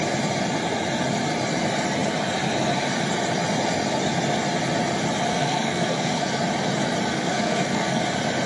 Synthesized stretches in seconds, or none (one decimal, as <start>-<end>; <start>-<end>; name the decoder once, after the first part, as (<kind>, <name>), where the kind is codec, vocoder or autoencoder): 5.3-6.2 (codec, SNAC); 7.1-8.0